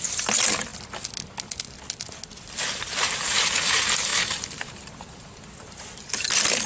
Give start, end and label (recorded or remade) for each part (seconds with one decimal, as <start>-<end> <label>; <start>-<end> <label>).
0.0-6.7 recorded